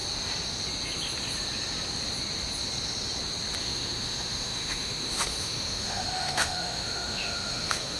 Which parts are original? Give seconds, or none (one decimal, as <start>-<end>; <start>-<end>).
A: 0.0-3.6